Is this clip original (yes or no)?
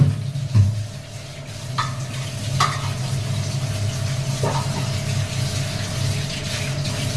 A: yes